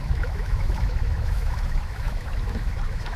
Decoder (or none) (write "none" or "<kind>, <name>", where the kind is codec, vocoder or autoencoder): autoencoder, DAC-VAE